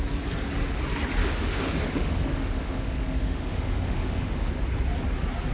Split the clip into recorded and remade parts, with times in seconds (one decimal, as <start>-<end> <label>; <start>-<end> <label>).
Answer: 0.0-1.2 recorded; 1.2-4.5 remade; 4.5-5.5 recorded